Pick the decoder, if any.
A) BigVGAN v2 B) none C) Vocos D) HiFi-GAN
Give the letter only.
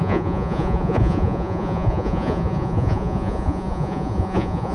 C